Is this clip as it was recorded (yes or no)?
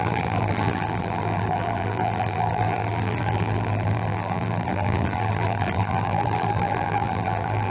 no